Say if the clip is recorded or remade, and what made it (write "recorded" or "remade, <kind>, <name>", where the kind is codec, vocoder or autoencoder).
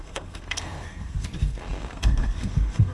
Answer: remade, codec, SNAC